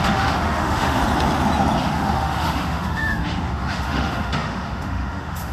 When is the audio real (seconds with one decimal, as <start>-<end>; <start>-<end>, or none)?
1.0-1.8